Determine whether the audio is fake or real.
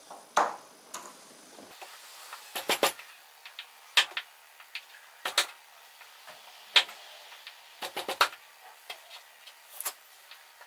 real